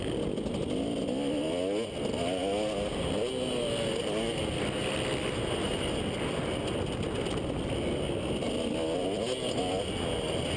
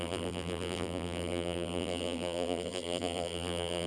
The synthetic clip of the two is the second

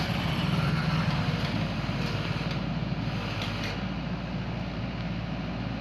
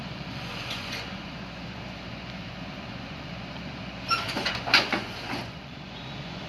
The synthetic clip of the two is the second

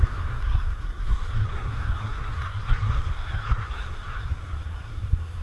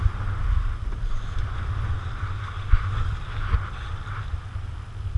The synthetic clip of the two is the first